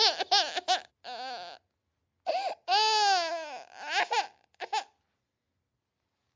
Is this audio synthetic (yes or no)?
no